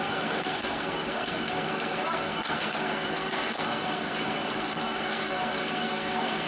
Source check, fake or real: fake